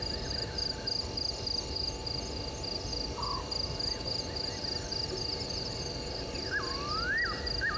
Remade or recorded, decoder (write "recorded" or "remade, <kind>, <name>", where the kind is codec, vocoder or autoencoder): recorded